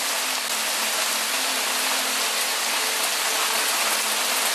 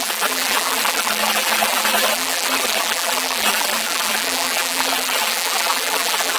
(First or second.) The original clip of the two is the first